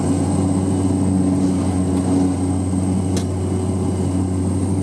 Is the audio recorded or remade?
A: recorded